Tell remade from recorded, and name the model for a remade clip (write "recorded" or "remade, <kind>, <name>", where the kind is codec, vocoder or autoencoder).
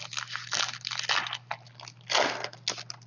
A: recorded